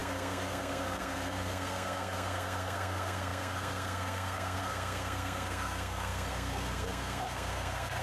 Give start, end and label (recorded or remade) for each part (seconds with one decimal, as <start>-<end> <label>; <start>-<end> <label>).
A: 0.0-8.0 remade